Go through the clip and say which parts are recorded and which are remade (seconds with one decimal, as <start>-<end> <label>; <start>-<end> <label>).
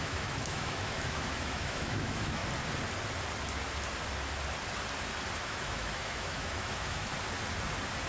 0.0-2.4 remade; 2.4-5.4 recorded; 5.4-7.1 remade; 7.1-8.1 recorded